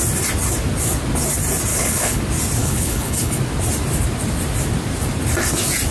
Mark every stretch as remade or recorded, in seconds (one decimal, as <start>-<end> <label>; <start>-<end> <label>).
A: 0.0-1.7 recorded; 1.7-2.2 remade; 2.2-2.6 recorded; 2.6-3.4 remade; 3.4-5.9 recorded